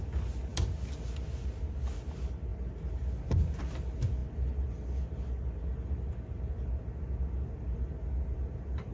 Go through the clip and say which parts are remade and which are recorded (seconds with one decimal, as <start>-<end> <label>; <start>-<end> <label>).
0.0-8.9 recorded